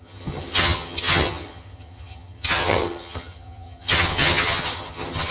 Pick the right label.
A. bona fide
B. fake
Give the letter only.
B